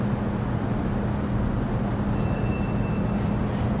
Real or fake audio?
real